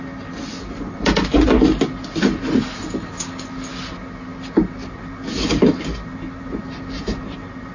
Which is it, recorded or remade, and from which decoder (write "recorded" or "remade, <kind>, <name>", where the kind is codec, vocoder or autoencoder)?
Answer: recorded